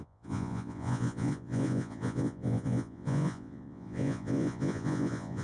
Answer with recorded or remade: remade